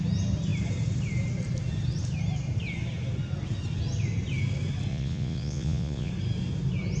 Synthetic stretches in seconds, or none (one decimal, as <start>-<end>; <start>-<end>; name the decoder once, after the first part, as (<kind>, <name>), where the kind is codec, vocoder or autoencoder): 4.9-6.1 (vocoder, Vocos)